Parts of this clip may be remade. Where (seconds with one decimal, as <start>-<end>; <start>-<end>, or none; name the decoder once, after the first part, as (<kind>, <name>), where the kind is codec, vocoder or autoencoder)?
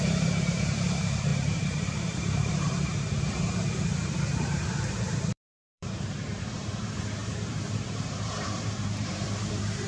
0.0-9.9 (vocoder, BigVGAN v2)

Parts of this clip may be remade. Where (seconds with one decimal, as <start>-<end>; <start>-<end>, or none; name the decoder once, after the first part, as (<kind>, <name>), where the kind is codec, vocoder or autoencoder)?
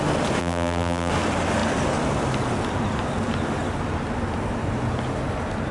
0.4-1.1 (vocoder, BigVGAN v2)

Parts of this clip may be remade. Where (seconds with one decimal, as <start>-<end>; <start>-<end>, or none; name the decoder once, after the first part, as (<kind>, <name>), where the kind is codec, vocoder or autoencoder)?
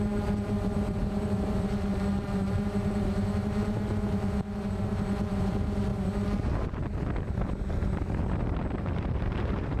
0.0-5.9 (vocoder, BigVGAN v2); 8.8-9.8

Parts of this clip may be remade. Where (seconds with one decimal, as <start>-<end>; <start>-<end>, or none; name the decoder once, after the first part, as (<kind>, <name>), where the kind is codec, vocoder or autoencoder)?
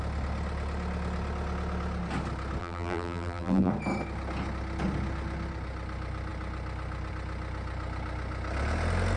2.6-3.7 (vocoder, BigVGAN v2)